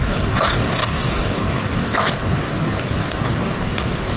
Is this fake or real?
fake